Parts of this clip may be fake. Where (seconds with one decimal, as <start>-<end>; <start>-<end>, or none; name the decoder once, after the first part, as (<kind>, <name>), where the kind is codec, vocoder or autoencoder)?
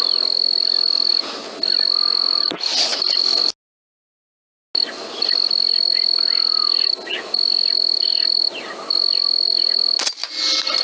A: none